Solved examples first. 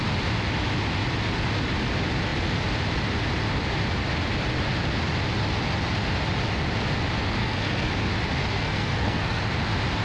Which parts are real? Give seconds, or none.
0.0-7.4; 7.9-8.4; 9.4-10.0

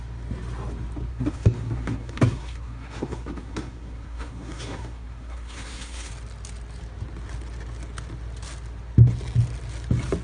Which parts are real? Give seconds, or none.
0.0-1.1; 6.1-10.2

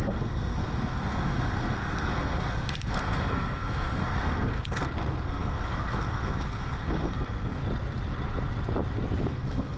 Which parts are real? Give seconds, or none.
7.6-9.3